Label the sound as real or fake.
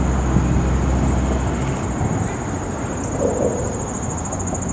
real